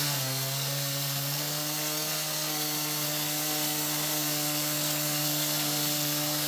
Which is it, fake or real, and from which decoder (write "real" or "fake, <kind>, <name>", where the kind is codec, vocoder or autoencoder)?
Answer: fake, codec, SNAC